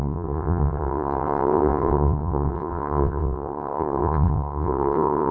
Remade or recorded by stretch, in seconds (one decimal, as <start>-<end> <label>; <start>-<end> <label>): 0.0-5.3 remade